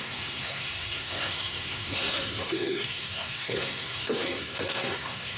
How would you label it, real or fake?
fake